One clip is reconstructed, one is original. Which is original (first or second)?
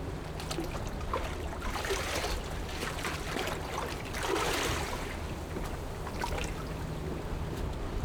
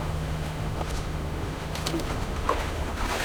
first